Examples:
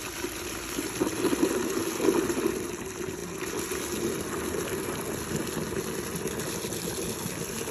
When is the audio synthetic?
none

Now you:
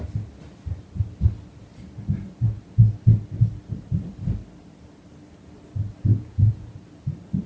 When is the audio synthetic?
6.1-6.7

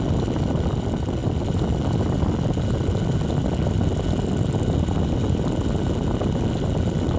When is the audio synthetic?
none

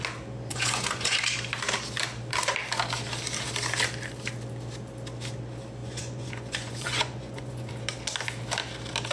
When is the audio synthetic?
0.5-1.2; 5.8-7.7

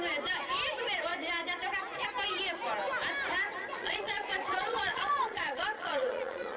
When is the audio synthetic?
3.7-6.6

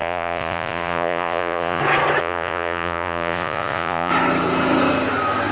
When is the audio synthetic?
0.0-1.8; 2.2-4.1